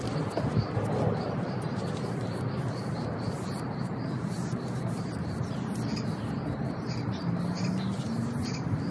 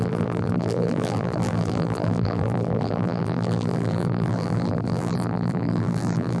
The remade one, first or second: second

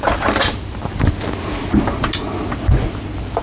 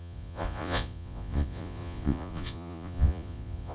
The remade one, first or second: second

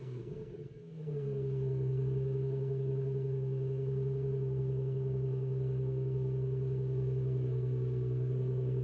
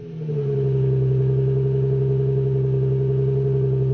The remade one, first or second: first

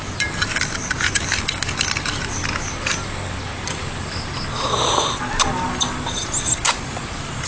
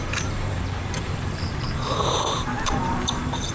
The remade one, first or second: second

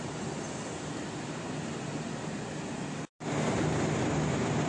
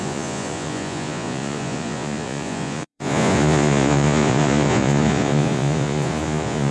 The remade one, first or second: second